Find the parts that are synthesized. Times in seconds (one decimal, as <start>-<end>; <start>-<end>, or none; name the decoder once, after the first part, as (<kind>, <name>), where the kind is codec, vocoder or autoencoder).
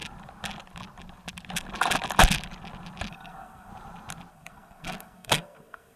3.1-3.7 (codec, SNAC); 4.3-6.0